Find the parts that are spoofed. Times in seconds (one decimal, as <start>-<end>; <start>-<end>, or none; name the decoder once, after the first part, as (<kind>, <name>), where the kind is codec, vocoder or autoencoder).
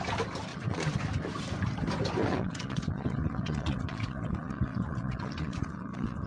0.5-1.0 (vocoder, WaveNeXt); 2.2-6.3